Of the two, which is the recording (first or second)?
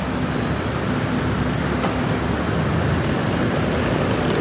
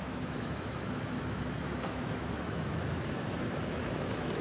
first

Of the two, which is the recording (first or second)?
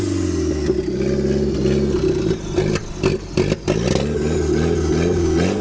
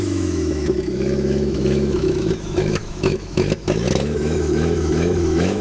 first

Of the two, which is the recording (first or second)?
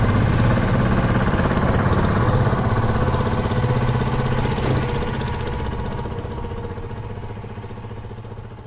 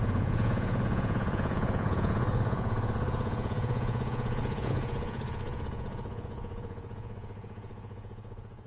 first